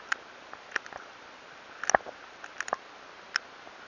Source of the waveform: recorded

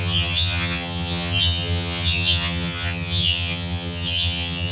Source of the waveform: remade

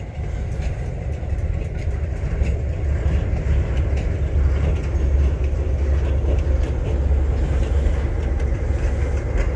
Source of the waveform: recorded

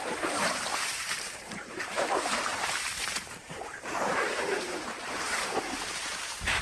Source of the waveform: remade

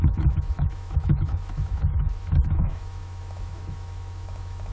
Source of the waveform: remade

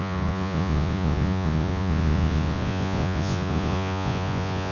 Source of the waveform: remade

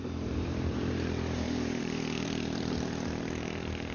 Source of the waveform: remade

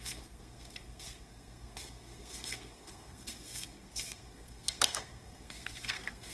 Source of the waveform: remade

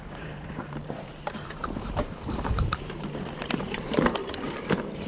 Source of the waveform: remade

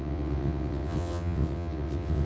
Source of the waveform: remade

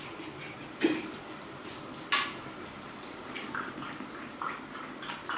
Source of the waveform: recorded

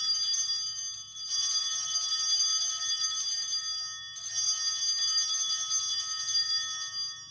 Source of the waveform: recorded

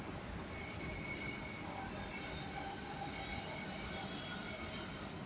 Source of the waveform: recorded